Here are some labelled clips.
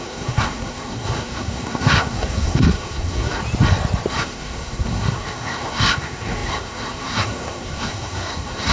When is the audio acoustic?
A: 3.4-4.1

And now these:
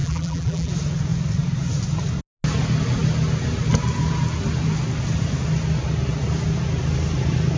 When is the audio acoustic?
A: 0.7-7.6

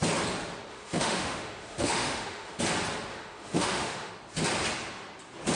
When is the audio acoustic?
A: 0.0-0.7; 2.6-3.1; 4.1-5.5

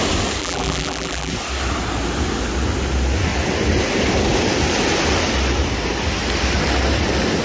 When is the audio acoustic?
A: 0.0-0.4; 1.3-7.4